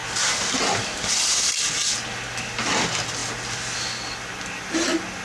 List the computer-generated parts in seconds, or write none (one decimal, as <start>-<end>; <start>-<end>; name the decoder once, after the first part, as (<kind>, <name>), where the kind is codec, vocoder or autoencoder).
none